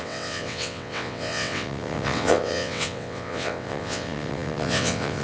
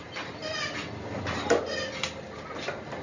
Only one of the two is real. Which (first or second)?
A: second